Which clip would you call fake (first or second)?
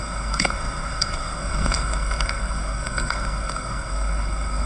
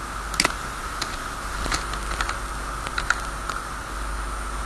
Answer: first